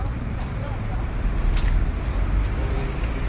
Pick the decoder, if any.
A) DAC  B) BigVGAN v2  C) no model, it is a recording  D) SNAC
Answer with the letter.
B